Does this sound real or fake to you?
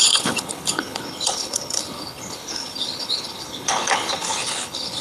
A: fake